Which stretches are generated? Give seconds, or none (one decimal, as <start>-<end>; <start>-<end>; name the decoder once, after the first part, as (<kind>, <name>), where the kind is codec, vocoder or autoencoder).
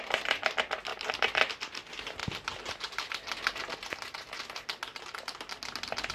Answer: none